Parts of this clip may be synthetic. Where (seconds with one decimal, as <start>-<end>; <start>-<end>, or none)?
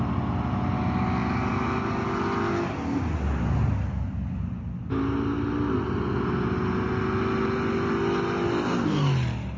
none